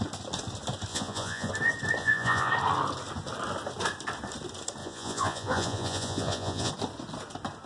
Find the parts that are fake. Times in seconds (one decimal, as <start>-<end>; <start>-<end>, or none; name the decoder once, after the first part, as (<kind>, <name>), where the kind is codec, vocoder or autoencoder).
0.9-1.5 (vocoder, Vocos); 2.0-2.5; 4.8-6.7